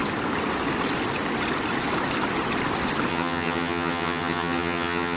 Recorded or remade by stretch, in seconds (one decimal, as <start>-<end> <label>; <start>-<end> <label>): 0.0-3.1 recorded; 3.1-5.2 remade